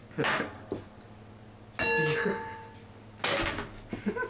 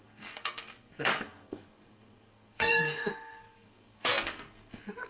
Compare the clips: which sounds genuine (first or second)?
first